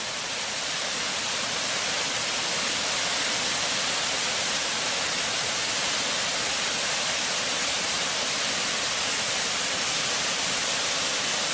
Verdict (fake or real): real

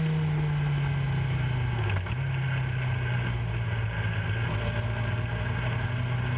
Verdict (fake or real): real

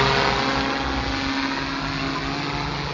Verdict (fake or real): real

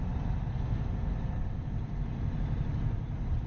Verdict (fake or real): fake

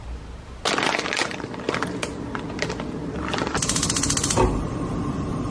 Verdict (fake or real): real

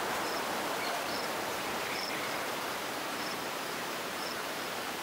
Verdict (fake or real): fake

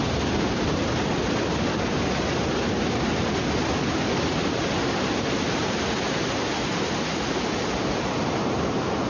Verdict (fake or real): real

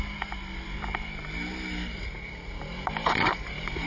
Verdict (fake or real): real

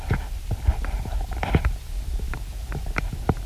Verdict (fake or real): real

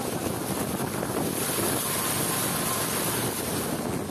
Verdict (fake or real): real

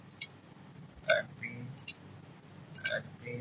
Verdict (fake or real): real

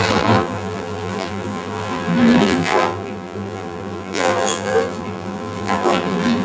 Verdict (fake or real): fake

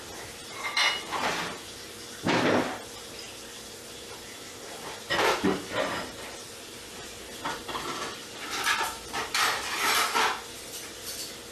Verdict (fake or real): real